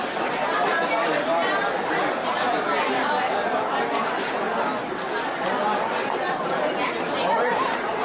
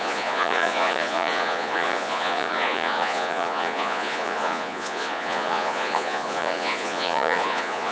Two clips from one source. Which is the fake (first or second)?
second